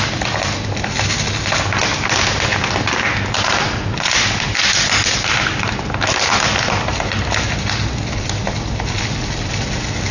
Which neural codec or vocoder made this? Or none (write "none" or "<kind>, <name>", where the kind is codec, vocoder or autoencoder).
none